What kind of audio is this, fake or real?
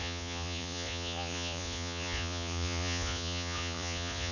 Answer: fake